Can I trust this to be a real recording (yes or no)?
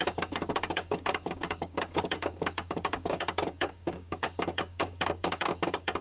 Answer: no